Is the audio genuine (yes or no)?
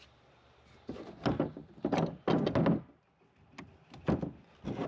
yes